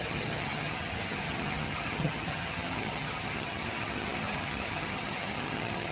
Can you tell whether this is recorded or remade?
remade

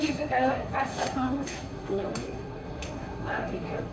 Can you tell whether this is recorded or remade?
remade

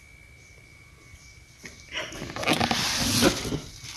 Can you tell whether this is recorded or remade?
recorded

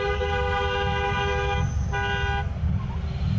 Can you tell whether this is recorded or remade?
recorded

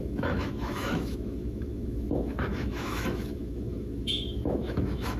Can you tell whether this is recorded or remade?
remade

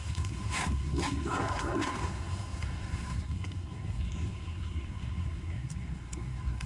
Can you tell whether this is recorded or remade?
remade